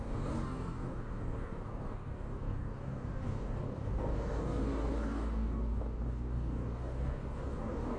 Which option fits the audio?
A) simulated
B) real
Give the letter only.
A